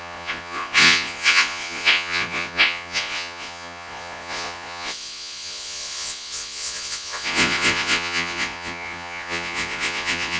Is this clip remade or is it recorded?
remade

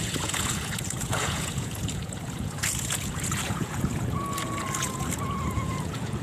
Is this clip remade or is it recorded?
remade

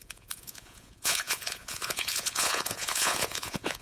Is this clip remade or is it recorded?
remade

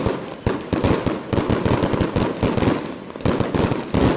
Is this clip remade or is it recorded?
recorded